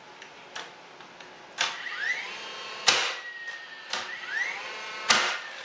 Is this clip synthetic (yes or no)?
no